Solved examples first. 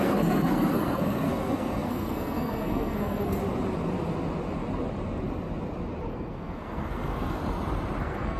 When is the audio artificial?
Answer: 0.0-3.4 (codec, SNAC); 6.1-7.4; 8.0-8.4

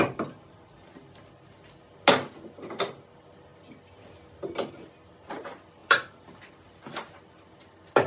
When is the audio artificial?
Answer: 5.8-6.5 (vocoder, BigVGAN v2)